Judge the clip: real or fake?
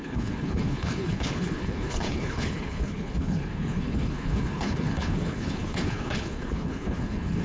fake